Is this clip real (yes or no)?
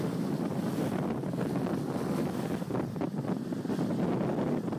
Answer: yes